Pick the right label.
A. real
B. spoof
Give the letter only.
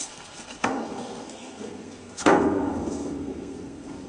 B